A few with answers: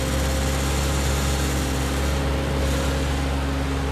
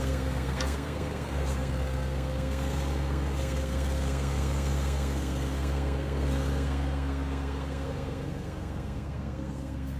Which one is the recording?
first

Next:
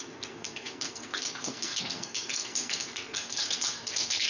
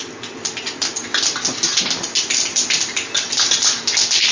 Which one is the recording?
second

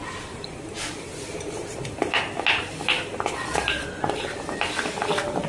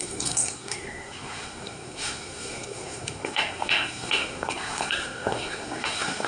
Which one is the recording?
first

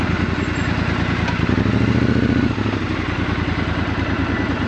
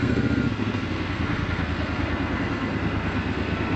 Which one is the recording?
first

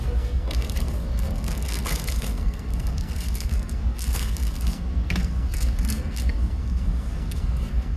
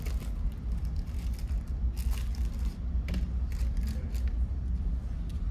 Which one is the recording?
second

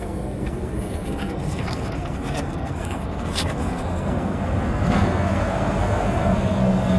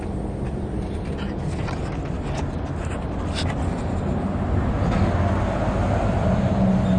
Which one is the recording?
second